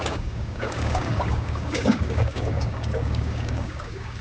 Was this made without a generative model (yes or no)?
no